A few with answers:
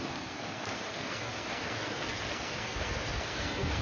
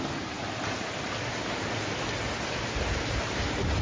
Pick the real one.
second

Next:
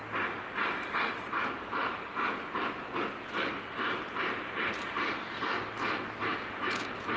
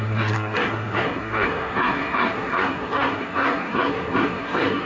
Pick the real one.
first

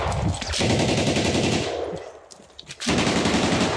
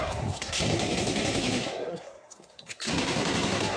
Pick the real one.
first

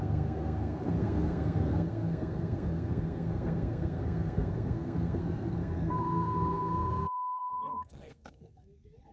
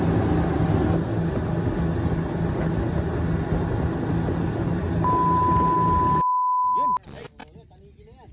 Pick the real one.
second